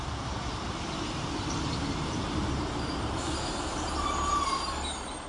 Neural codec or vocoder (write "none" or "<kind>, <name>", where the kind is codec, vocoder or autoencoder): vocoder, BigVGAN v2